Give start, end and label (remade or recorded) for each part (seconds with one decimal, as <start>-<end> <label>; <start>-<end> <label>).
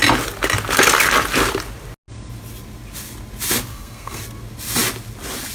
0.0-3.7 recorded; 3.7-4.2 remade; 4.2-5.5 recorded